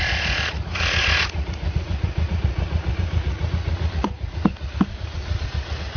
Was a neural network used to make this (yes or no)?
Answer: yes